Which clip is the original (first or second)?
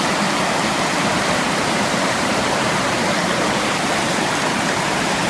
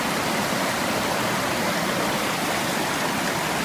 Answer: second